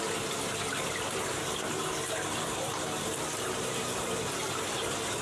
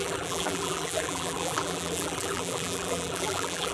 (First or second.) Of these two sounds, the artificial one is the second